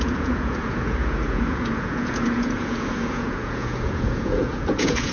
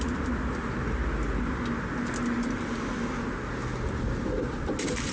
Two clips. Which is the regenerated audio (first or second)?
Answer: first